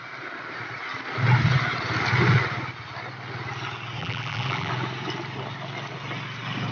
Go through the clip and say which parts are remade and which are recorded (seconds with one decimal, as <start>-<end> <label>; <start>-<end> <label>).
0.0-4.0 recorded; 4.0-4.7 remade; 4.7-6.7 recorded